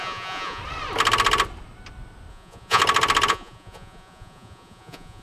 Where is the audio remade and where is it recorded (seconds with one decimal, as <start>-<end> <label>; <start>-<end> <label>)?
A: 0.0-0.6 remade; 0.6-2.3 recorded; 2.3-2.8 remade; 2.8-3.3 recorded; 3.3-5.2 remade